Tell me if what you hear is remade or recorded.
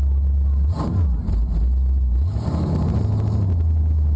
recorded